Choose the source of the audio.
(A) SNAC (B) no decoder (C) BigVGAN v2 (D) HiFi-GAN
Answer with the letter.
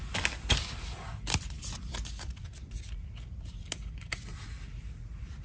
B